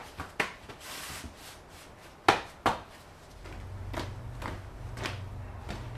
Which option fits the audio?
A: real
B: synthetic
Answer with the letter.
A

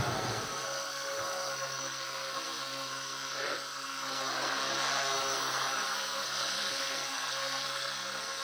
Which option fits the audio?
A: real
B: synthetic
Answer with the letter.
B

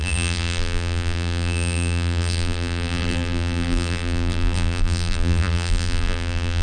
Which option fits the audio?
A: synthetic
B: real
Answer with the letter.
A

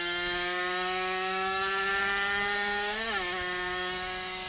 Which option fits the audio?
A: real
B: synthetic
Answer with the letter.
B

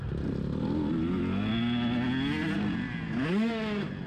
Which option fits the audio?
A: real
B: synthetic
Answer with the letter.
A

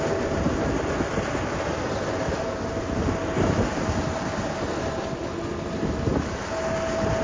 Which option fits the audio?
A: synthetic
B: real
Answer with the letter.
B